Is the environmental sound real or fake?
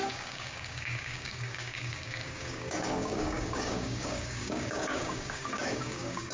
fake